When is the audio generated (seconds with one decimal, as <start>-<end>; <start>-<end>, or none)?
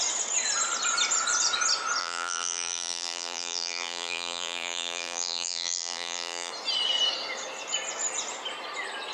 2.0-6.5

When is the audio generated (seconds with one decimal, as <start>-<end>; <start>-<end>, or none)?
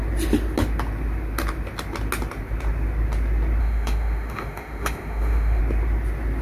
3.6-5.6